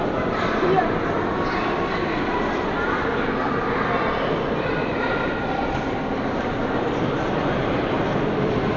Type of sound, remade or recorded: recorded